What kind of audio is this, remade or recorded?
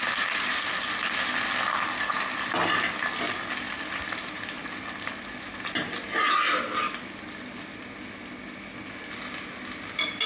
recorded